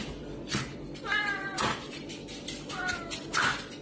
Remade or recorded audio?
recorded